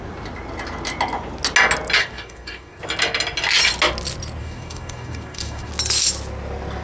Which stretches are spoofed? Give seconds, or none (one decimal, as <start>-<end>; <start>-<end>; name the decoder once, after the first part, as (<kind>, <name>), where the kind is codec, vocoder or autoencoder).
2.0-2.8 (codec, DAC); 4.4-5.7

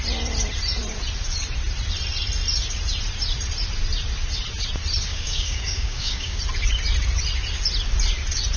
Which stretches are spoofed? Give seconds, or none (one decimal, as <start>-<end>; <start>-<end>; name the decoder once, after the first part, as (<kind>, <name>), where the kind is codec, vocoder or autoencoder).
5.1-6.4 (codec, DAC)

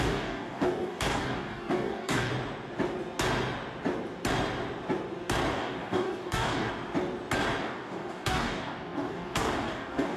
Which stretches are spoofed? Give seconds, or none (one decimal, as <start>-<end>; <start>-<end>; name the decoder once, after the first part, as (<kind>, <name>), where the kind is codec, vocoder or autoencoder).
0.0-2.3 (codec, DAC); 5.5-6.7; 7.6-10.2

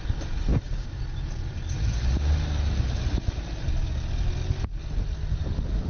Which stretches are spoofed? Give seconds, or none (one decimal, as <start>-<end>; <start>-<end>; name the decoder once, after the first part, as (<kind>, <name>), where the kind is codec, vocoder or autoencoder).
0.5-1.0 (codec, DAC)

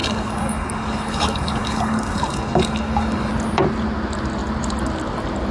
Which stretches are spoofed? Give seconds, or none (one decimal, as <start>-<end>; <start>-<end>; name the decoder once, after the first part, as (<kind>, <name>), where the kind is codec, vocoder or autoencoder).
0.0-3.3 (codec, DAC)

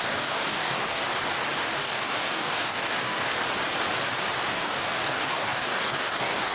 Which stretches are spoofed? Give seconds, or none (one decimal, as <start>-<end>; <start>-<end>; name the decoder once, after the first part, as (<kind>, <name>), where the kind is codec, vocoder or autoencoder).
0.0-1.0 (codec, DAC); 1.8-3.3; 4.5-6.5